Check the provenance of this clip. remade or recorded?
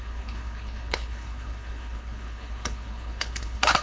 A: remade